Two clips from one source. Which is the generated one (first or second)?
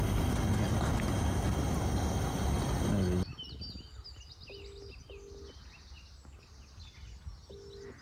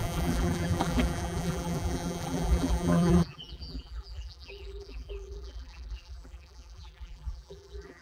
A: second